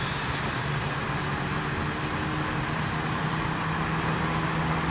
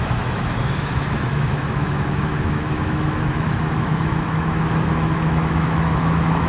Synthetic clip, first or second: second